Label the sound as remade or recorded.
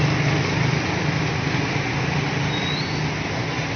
recorded